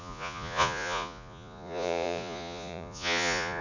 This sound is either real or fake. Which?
fake